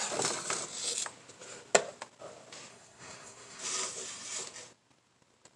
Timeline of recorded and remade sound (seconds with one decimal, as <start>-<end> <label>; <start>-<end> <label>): 0.0-2.7 recorded; 2.7-3.6 remade; 3.6-5.6 recorded